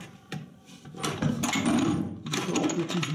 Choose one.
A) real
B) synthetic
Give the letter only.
B